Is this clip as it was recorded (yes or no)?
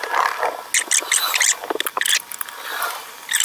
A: yes